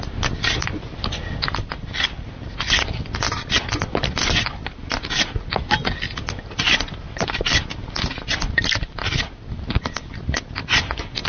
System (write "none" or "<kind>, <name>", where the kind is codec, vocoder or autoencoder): none